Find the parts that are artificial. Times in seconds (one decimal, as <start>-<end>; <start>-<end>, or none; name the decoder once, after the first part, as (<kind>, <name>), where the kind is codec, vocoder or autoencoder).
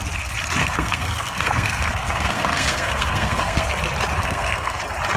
0.6-3.7 (codec, SNAC); 4.2-4.8